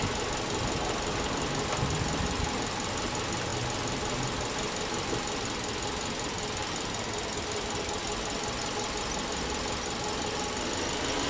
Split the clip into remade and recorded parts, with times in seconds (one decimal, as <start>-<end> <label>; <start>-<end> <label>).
0.0-11.3 recorded